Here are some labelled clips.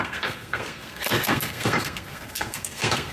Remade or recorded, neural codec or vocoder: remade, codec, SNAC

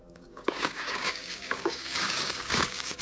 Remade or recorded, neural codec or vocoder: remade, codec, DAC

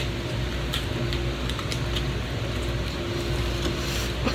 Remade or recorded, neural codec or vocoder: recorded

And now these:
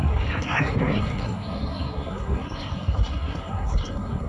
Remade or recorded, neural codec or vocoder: remade, codec, SNAC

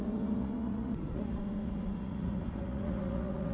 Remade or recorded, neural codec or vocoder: remade, vocoder, Vocos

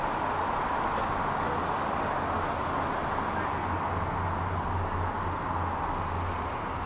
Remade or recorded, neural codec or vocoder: recorded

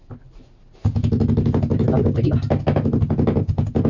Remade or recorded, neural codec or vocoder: recorded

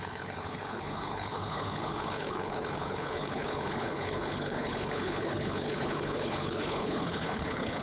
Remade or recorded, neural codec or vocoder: remade, codec, HILCodec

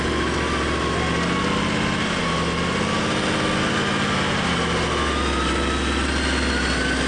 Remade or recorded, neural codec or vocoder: recorded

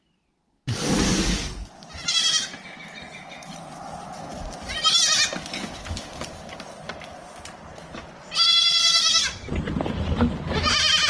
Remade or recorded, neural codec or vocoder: recorded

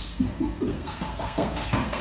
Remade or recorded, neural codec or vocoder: remade, codec, SNAC